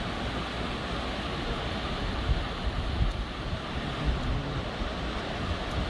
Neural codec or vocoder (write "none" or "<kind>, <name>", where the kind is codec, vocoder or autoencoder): none